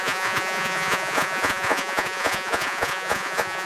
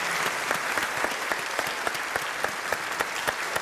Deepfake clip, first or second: first